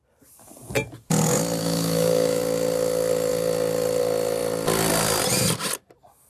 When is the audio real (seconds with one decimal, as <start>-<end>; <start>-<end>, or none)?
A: 0.0-1.6; 2.4-6.3